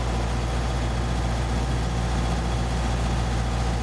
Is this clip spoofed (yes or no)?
no